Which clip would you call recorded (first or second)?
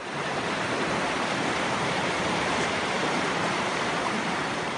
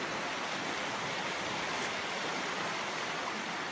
second